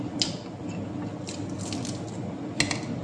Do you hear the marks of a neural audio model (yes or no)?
no